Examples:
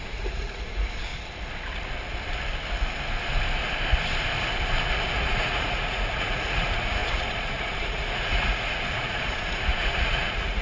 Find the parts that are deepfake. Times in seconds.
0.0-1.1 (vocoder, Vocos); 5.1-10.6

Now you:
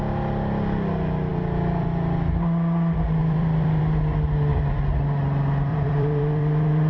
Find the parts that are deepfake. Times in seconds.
1.3-1.9 (vocoder, BigVGAN v2); 3.2-3.8; 4.5-5.0; 5.7-6.9

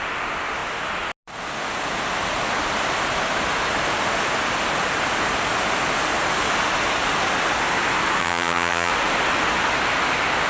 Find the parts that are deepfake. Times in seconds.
8.2-8.9 (vocoder, HiFi-GAN)

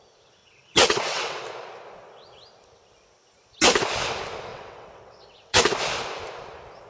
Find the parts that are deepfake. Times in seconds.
0.4-1.4 (vocoder, WaveNeXt); 4.5-5.6